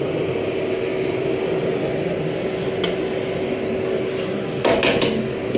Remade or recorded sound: recorded